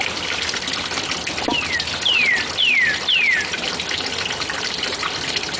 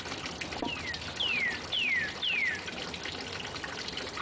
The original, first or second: second